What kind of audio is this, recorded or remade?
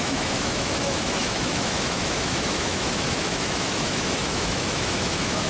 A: remade